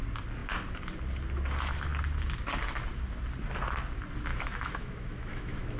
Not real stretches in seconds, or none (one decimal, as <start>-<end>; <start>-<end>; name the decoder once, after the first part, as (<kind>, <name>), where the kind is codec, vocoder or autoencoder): 4.3-5.8 (autoencoder, DAC-VAE)